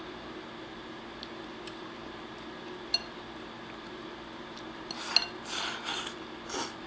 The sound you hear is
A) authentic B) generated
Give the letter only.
A